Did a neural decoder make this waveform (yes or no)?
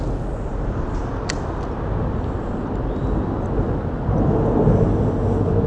no